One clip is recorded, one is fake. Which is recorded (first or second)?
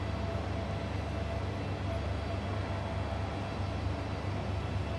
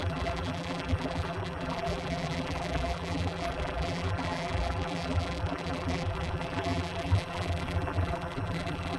first